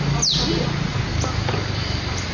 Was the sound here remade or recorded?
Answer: recorded